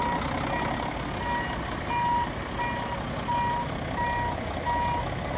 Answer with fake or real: real